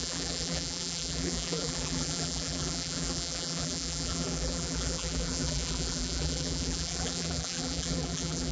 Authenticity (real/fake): fake